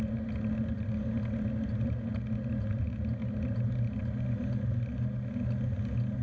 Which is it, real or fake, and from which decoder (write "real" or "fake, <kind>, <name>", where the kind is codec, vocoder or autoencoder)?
real